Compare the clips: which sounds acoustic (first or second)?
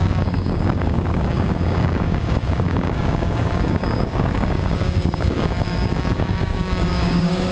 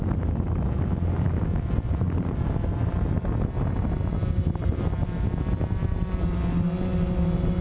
second